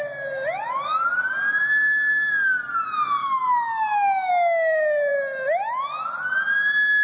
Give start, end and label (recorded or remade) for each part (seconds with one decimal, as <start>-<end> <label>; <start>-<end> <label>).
0.0-3.2 recorded; 3.2-4.3 remade; 4.3-7.0 recorded